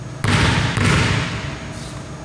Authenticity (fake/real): real